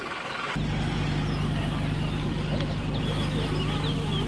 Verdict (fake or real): real